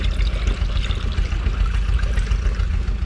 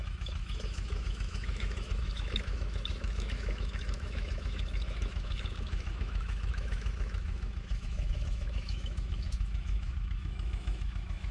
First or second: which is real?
first